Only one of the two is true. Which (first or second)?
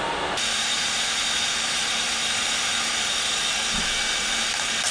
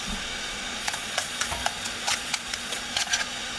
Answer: first